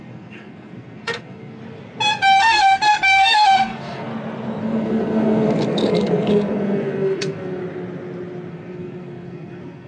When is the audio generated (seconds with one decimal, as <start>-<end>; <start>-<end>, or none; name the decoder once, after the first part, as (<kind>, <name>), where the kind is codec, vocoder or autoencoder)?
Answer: 0.0-1.6 (codec, SNAC); 2.4-4.1; 4.6-7.6; 8.5-9.9

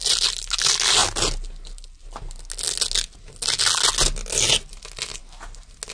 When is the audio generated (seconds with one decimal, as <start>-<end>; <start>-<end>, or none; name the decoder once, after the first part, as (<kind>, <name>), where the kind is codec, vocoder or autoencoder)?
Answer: none